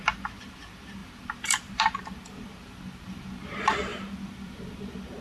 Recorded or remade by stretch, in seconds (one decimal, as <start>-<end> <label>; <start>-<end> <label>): 0.0-5.2 recorded